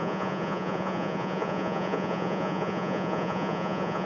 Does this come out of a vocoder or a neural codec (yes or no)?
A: yes